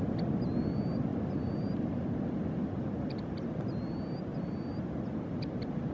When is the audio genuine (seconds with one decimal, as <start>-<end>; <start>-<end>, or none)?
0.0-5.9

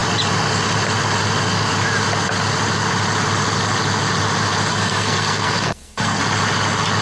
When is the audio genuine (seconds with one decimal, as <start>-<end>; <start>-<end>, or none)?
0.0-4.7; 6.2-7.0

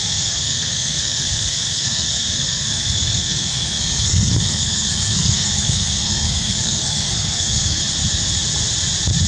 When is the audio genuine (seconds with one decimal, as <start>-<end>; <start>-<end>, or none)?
7.8-9.3

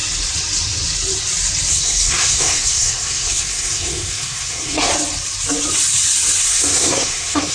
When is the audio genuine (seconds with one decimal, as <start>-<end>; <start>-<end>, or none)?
0.0-1.7; 4.9-6.4

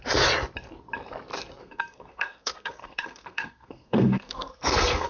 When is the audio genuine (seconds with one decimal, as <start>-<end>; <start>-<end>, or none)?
0.0-1.6